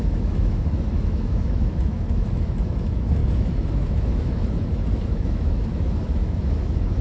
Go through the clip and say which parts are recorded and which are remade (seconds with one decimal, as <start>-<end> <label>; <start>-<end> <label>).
0.0-7.0 remade